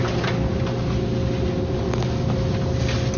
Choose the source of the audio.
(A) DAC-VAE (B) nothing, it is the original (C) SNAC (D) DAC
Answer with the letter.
B